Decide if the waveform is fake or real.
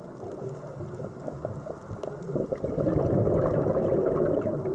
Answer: real